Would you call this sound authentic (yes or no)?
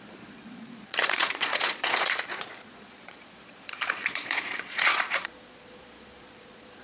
no